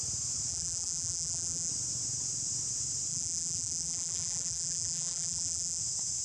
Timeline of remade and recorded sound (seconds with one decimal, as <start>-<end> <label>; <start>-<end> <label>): 0.0-0.5 recorded; 0.5-1.7 remade; 1.7-3.1 recorded; 3.1-5.8 remade; 5.8-6.2 recorded